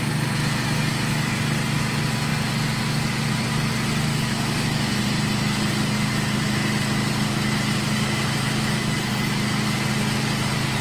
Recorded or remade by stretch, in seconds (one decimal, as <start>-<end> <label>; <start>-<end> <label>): 0.0-4.1 recorded; 4.1-4.9 remade; 4.9-10.8 recorded